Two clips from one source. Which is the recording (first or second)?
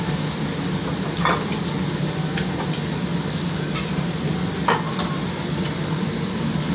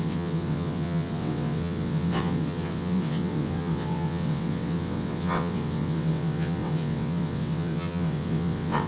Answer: first